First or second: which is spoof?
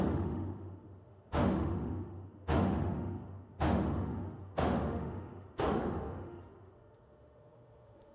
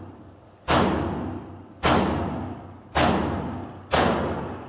first